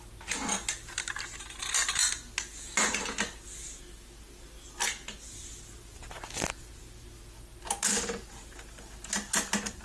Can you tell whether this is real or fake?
real